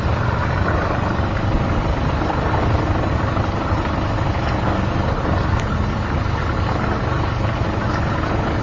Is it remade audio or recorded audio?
recorded